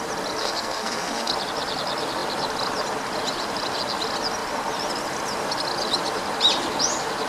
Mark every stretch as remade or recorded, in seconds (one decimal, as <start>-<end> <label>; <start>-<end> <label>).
0.0-0.4 recorded; 0.4-1.3 remade; 1.3-7.3 recorded